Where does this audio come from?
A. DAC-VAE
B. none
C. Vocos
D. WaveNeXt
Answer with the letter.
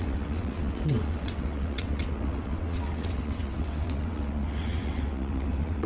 D